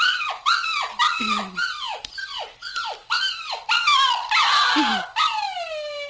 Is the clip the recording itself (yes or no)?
yes